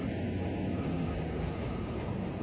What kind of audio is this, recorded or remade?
recorded